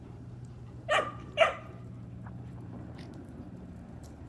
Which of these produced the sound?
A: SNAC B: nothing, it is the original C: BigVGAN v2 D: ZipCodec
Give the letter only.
C